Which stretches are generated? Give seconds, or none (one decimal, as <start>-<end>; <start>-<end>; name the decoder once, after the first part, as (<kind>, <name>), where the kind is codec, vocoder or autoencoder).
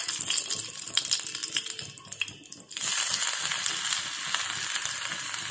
0.0-1.4 (vocoder, BigVGAN v2); 2.2-2.8; 4.6-5.5